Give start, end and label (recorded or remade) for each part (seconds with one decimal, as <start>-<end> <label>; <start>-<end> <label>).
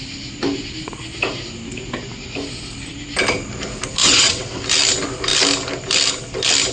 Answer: 0.0-4.0 recorded; 4.0-4.6 remade; 4.6-6.7 recorded